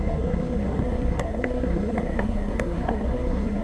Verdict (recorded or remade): remade